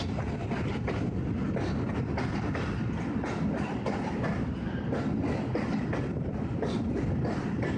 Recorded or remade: recorded